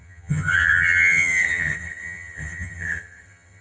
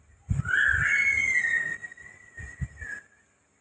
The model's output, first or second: first